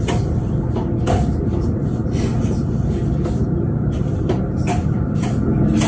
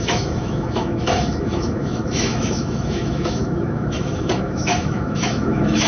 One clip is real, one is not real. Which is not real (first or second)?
second